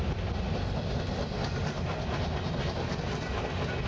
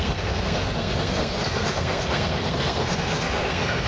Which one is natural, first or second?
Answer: first